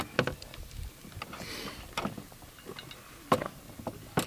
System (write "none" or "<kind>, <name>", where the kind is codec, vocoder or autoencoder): none